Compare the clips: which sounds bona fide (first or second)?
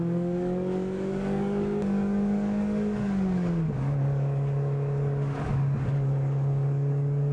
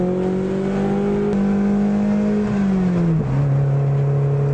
second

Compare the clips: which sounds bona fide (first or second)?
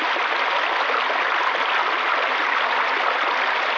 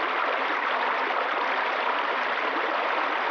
first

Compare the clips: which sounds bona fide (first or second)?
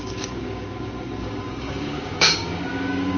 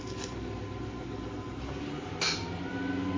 second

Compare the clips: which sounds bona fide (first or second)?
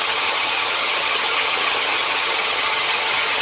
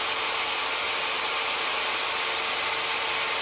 second